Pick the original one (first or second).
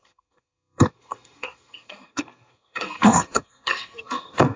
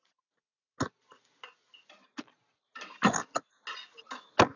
second